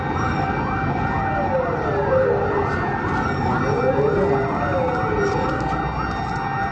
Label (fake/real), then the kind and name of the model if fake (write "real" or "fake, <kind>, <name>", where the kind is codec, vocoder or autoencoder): real